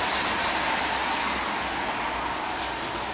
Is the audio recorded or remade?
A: recorded